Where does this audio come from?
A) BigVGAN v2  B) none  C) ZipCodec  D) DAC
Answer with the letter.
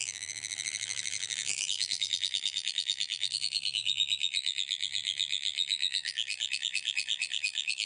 A